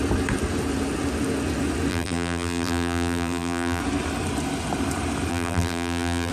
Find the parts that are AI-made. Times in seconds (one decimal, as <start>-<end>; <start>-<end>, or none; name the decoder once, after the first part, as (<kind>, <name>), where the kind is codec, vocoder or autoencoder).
1.9-3.8 (vocoder, BigVGAN v2); 5.3-6.3